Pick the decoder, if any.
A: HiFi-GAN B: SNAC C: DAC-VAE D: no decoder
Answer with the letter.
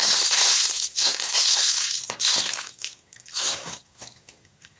B